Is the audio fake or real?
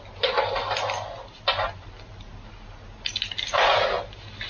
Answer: real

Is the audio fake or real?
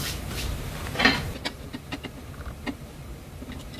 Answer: real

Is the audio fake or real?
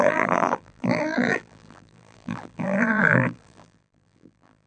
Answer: fake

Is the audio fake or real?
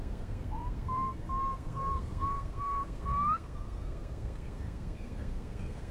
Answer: fake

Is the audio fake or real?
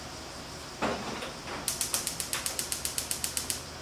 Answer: real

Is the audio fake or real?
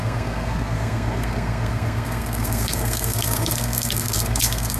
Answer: fake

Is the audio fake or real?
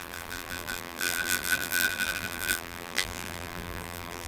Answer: fake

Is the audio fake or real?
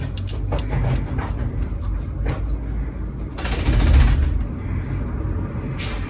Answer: real